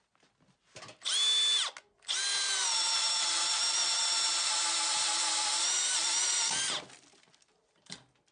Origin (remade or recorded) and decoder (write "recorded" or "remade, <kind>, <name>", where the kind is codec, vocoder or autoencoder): recorded